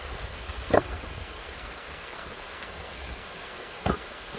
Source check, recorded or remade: remade